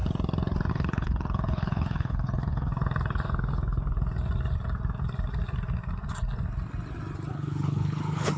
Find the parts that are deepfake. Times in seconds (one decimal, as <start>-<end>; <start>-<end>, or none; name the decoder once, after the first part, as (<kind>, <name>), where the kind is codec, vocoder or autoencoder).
0.7-2.7 (codec, HILCodec); 7.3-8.4